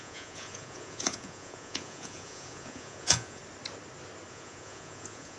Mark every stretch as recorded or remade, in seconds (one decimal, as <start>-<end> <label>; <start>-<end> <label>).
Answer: 0.0-3.4 remade; 3.4-4.3 recorded; 4.3-5.4 remade